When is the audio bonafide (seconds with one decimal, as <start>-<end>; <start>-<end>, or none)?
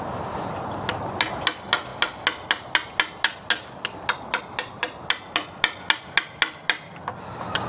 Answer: 0.0-7.7